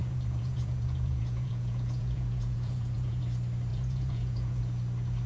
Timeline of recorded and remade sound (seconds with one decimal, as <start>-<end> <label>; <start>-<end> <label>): 0.0-3.2 remade; 3.2-3.7 recorded; 3.7-4.6 remade; 4.6-5.3 recorded